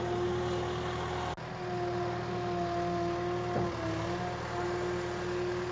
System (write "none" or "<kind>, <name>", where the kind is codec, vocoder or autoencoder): none